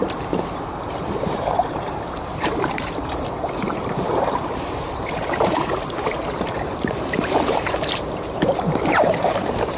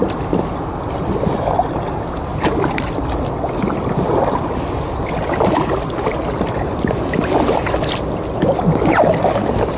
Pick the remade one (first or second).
first